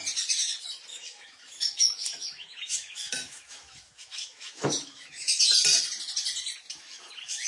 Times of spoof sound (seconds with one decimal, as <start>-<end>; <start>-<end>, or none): 0.9-5.4; 6.7-7.5